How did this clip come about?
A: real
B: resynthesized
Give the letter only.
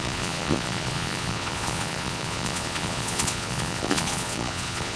B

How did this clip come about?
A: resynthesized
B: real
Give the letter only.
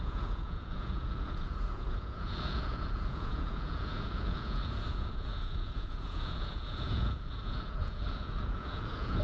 A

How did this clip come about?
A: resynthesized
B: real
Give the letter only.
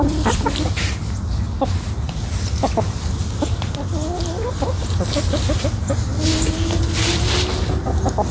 B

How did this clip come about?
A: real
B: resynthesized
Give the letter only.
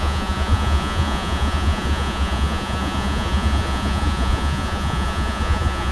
B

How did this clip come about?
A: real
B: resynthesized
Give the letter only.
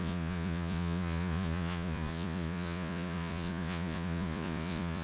B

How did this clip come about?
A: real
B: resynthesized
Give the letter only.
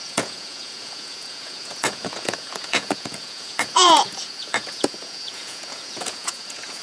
B